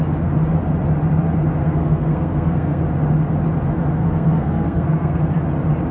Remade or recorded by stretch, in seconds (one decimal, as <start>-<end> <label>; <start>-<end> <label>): 0.0-1.6 recorded; 1.6-2.8 remade; 2.8-4.0 recorded; 4.0-5.2 remade; 5.2-5.9 recorded